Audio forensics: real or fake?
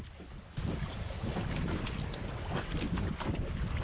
real